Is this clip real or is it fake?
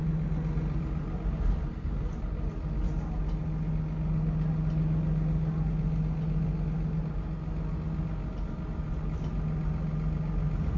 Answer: real